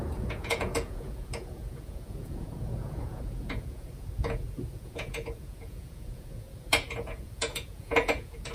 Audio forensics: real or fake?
fake